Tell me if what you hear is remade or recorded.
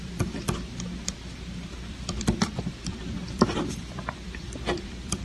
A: remade